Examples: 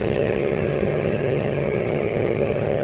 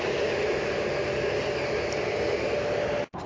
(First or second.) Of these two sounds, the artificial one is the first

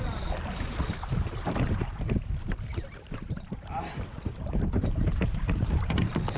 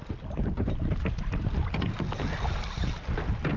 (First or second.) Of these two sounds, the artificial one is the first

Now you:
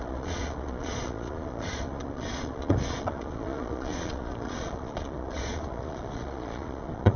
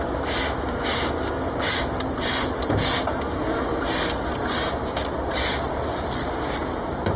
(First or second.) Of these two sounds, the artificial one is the first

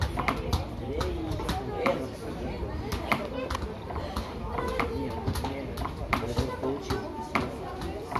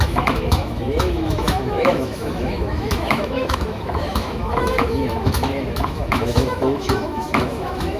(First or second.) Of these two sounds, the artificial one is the second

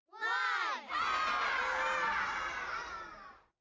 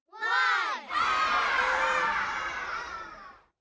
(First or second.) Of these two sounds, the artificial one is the second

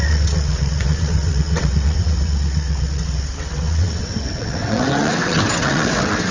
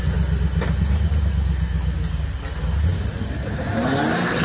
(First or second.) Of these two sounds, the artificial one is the first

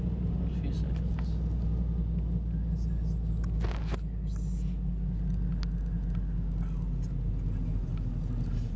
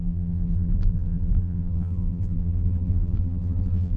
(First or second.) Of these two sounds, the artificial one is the second